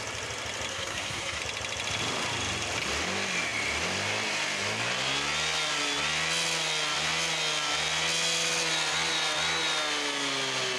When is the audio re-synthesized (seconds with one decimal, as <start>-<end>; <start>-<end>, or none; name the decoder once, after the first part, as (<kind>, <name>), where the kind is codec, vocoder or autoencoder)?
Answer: 0.7-1.4 (codec, SNAC)